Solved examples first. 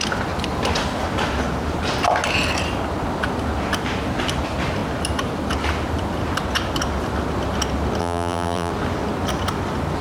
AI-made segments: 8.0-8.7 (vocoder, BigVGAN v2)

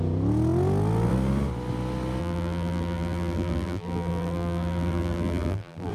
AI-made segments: 2.2-5.9 (vocoder, BigVGAN v2)